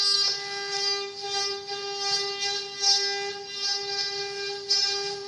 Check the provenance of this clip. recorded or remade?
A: recorded